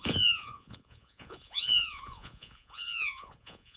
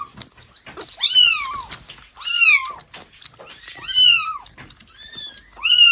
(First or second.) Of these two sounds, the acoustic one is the second